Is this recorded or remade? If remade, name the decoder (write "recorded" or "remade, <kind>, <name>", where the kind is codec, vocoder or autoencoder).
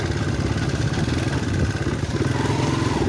recorded